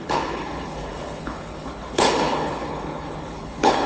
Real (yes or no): no